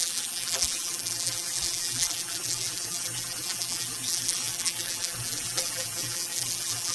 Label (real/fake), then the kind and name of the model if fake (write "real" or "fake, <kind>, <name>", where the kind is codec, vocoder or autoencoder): fake, vocoder, BigVGAN v2